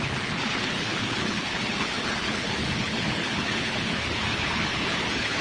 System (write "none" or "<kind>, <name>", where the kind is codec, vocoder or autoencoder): codec, HILCodec